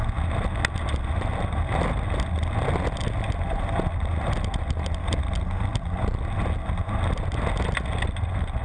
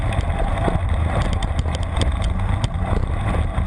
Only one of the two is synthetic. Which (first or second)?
second